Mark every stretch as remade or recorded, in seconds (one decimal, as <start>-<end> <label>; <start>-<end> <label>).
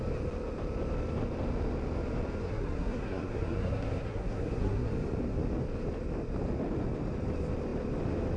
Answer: 0.0-2.4 recorded; 2.4-4.9 remade; 4.9-8.4 recorded